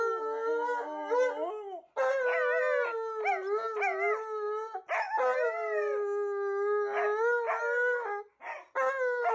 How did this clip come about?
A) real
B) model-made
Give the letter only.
A